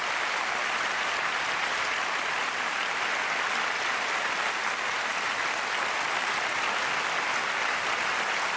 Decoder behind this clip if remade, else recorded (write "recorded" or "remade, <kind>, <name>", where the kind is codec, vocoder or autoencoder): recorded